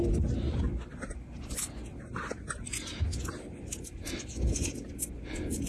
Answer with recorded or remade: recorded